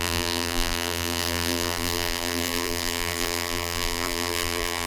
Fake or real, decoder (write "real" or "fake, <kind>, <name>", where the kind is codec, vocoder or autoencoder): fake, vocoder, BigVGAN v2